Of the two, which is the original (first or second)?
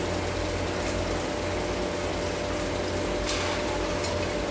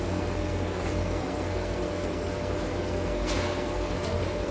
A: first